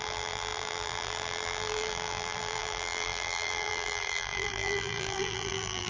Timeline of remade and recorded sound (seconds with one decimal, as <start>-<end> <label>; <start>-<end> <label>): 0.0-5.9 remade